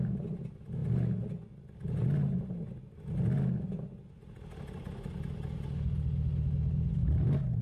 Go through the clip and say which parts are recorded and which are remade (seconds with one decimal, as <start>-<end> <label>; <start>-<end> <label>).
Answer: 0.0-7.6 recorded